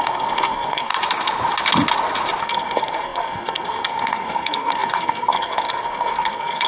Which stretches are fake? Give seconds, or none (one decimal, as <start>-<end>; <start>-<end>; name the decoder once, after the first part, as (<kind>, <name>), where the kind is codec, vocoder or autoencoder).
0.0-0.9 (codec, SNAC); 2.4-6.7